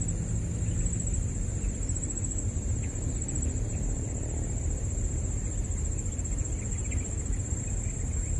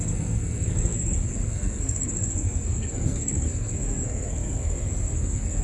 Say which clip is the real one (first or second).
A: first